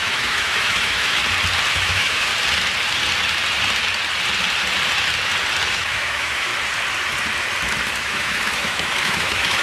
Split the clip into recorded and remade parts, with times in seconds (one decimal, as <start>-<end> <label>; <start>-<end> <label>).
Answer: 0.0-1.2 remade; 1.2-1.7 recorded; 1.7-2.3 remade; 2.3-5.7 recorded; 5.7-6.5 remade; 6.5-8.0 recorded; 8.0-9.6 remade